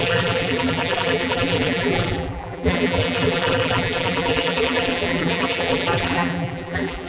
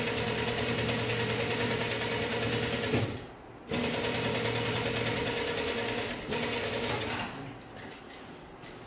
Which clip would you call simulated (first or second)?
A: first